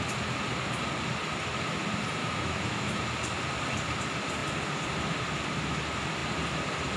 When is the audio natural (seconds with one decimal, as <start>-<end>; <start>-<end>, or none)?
0.0-2.2; 3.0-7.0